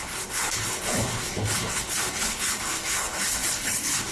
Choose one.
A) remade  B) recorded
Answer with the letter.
A